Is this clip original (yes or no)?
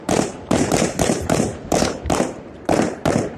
no